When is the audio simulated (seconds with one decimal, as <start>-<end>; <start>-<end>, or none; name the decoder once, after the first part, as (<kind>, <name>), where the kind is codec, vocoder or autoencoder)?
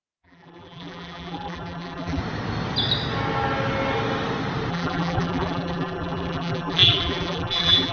0.0-2.2 (vocoder, BigVGAN v2); 4.7-7.9